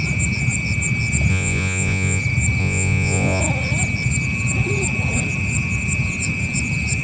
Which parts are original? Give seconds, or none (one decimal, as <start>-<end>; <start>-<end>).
0.0-1.3; 2.2-2.6; 3.4-7.0